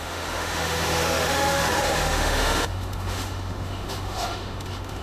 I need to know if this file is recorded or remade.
remade